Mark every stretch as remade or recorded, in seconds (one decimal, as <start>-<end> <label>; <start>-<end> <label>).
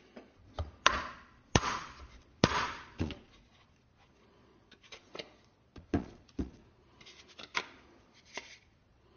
0.0-6.6 remade; 6.6-8.0 recorded; 8.0-9.2 remade